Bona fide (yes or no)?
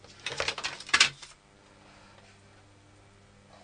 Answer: yes